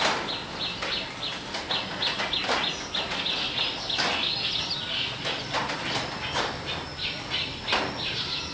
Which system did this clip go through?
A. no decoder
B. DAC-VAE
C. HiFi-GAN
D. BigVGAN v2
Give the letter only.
A